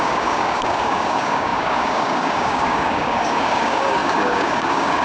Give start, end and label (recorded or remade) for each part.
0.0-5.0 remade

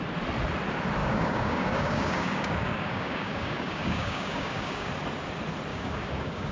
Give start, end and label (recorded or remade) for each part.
0.0-1.0 recorded; 1.0-4.9 remade; 4.9-5.7 recorded; 5.7-6.5 remade